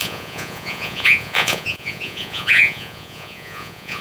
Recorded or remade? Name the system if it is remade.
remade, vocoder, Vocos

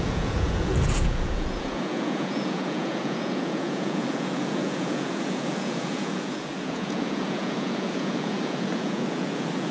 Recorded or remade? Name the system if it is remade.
remade, vocoder, Vocos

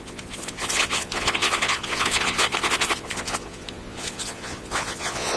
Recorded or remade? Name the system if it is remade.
remade, vocoder, Vocos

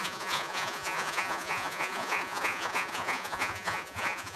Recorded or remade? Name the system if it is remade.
remade, vocoder, Vocos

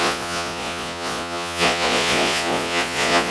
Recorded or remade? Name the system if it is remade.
remade, vocoder, Vocos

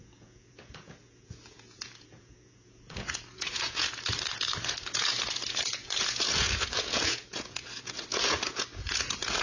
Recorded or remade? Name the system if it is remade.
remade, vocoder, Vocos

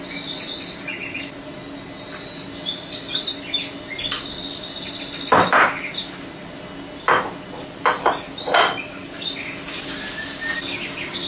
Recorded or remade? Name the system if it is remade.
recorded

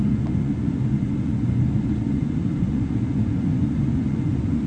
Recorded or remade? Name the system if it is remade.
remade, vocoder, Vocos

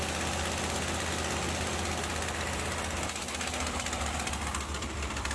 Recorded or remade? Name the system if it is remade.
recorded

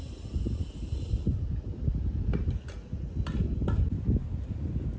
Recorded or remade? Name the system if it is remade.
recorded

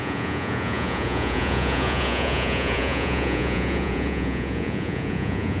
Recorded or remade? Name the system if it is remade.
remade, vocoder, Vocos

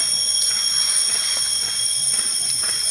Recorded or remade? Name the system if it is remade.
remade, vocoder, Vocos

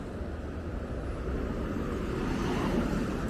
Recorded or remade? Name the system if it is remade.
recorded